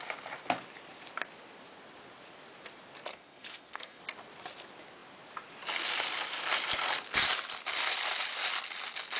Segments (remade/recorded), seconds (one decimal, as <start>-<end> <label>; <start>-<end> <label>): 0.0-3.1 recorded; 3.1-4.0 remade; 4.0-9.2 recorded